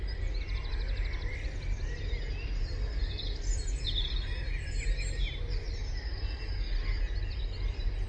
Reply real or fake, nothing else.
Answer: real